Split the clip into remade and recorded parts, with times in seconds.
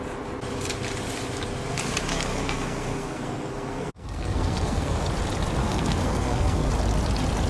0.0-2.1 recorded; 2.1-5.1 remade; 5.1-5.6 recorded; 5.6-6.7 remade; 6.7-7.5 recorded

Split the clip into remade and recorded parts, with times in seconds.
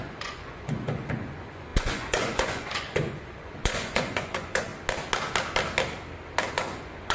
0.0-4.7 remade; 4.7-6.5 recorded; 6.5-7.1 remade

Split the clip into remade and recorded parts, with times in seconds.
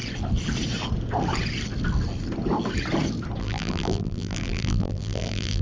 0.0-3.4 recorded; 3.4-5.6 remade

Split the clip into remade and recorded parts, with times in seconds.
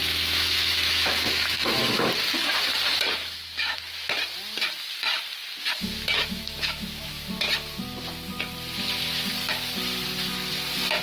0.0-2.1 remade; 2.1-3.2 recorded; 3.2-3.8 remade; 3.8-6.2 recorded; 6.2-7.1 remade; 7.1-11.0 recorded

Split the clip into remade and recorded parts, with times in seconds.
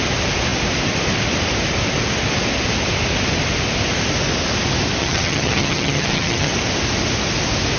0.0-5.0 recorded; 5.0-6.5 remade; 6.5-7.8 recorded